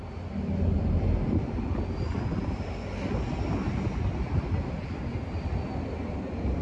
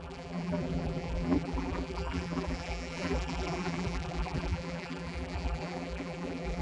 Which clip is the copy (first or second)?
second